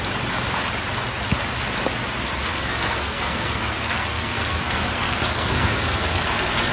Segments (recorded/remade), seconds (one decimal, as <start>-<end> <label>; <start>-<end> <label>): 0.0-2.5 recorded; 2.5-6.7 remade